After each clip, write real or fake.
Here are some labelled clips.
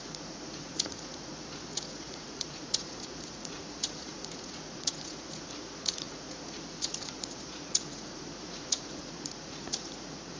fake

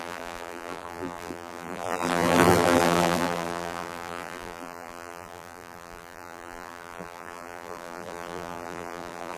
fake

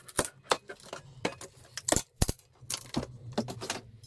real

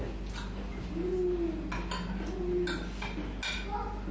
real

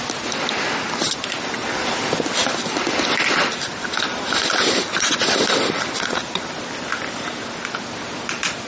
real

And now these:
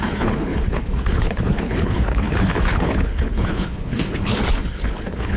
fake